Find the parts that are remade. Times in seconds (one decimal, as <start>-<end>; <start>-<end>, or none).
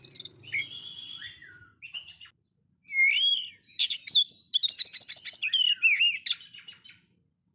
none